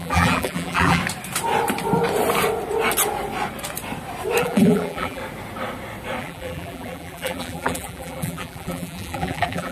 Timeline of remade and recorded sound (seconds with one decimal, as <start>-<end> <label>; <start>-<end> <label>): 0.0-1.0 remade; 1.0-4.4 recorded; 4.4-5.2 remade; 5.2-6.2 recorded; 6.2-9.7 remade